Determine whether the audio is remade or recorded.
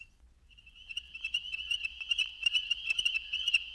remade